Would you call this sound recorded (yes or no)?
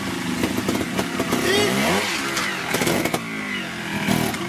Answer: yes